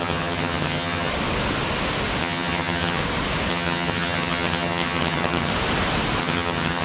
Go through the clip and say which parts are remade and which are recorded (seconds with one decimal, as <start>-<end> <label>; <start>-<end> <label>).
0.0-1.1 remade; 1.1-2.2 recorded; 2.2-3.0 remade; 3.0-3.5 recorded; 3.5-5.5 remade; 5.5-6.2 recorded; 6.2-6.8 remade